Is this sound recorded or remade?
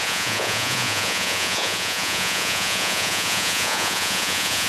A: remade